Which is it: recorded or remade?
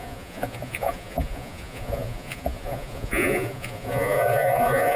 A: remade